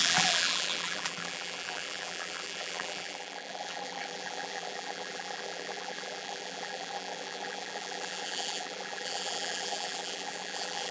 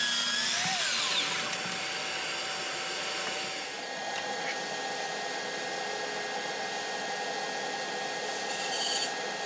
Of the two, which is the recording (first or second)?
second